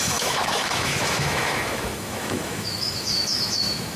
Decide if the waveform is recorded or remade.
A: remade